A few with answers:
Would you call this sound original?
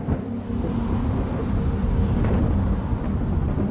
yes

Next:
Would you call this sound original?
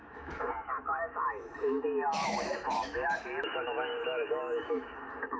no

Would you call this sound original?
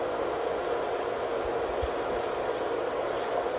yes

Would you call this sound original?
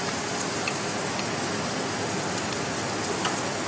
yes